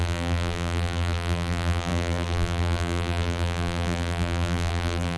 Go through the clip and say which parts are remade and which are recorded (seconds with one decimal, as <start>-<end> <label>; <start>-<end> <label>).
0.0-5.2 remade